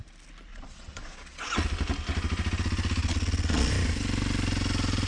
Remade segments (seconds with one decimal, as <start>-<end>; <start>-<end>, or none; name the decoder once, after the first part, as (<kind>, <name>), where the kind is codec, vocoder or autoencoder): 0.5-1.5 (vocoder, Vocos); 3.0-3.7

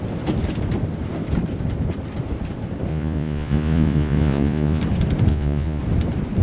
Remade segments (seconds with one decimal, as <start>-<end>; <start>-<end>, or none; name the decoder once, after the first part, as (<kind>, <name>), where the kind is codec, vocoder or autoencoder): 2.9-4.8 (vocoder, Vocos); 5.3-5.8

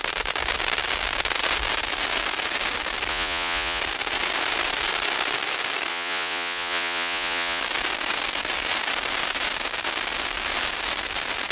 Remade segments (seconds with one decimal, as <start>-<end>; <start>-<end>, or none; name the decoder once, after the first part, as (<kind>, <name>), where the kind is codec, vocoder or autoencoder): 3.1-3.8 (vocoder, Vocos); 5.9-7.6

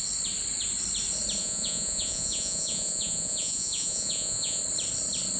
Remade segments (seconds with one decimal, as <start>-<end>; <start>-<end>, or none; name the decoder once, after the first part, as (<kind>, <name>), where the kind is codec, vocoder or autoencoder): 1.4-4.6 (vocoder, Vocos)

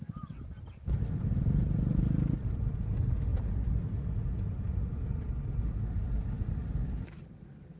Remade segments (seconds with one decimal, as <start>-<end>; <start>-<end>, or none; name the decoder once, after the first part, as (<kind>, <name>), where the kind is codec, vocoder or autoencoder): none

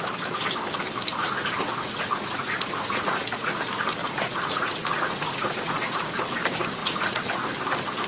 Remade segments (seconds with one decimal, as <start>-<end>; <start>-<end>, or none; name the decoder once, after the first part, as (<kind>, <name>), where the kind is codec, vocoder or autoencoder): 1.2-3.6 (vocoder, Vocos); 4.0-6.1; 6.8-7.5